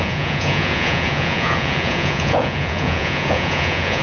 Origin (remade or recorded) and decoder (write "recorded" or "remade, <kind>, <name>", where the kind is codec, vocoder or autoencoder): remade, vocoder, Vocos